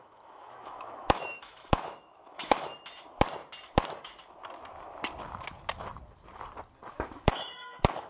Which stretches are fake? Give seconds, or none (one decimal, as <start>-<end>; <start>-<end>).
0.0-2.7; 6.9-8.1